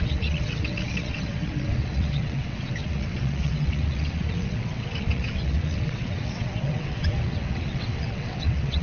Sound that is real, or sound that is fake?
fake